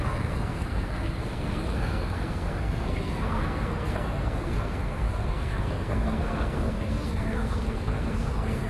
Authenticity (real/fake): fake